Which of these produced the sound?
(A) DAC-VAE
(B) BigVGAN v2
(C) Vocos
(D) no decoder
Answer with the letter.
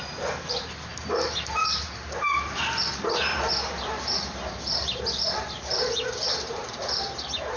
B